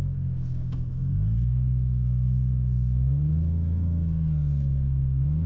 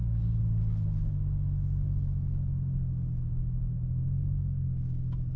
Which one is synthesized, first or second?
first